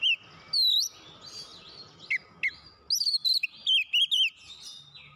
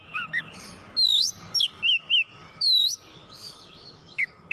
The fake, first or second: second